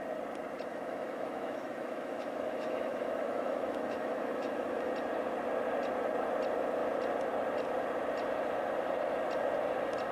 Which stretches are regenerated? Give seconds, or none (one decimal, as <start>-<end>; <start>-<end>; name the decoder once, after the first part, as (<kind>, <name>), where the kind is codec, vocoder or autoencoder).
0.7-4.9 (autoencoder, DAC-VAE)